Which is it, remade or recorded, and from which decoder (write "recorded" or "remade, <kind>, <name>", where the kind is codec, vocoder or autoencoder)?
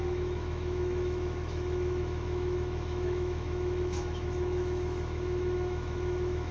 remade, autoencoder, DAC-VAE